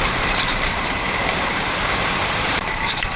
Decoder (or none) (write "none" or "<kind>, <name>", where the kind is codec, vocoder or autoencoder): vocoder, BigVGAN v2